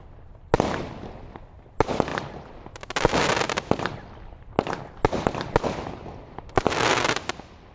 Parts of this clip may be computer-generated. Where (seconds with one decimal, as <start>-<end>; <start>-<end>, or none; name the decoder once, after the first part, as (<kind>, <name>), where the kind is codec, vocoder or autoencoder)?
none